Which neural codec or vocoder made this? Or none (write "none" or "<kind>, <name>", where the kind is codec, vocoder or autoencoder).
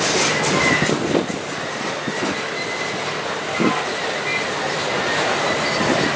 none